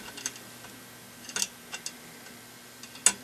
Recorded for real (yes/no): yes